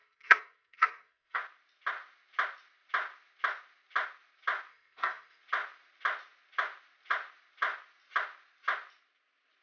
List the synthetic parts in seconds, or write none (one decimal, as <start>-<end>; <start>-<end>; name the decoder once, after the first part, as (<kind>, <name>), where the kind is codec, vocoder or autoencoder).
0.0-1.4 (codec, SNAC); 4.7-5.4

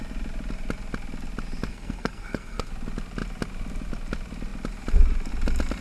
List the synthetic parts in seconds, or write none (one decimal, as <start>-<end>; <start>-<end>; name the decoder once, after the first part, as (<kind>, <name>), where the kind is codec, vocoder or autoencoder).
1.7-2.7 (codec, SNAC)

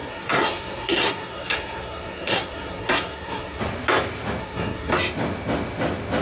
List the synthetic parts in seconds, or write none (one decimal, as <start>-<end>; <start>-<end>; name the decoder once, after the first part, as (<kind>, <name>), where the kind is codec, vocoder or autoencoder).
0.0-3.6 (codec, SNAC); 4.4-4.9

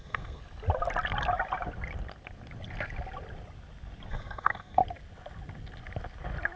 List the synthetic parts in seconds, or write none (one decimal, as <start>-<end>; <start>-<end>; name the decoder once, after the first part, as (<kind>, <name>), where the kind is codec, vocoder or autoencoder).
0.0-0.4 (codec, SNAC); 4.1-4.8

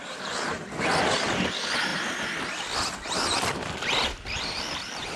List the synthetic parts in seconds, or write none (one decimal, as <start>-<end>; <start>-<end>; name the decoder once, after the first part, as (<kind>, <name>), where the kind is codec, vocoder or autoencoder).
none